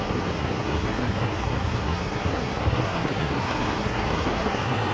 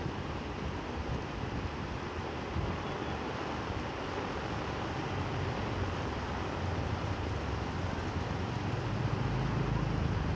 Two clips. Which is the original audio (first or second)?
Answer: second